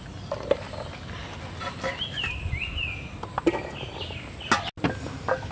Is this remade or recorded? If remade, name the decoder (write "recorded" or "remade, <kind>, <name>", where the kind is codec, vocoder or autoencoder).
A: recorded